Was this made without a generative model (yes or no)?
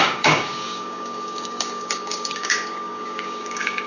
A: no